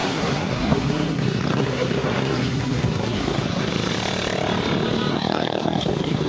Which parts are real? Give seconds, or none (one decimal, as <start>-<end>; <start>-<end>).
3.7-5.1